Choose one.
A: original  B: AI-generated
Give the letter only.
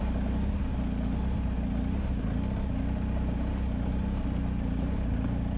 A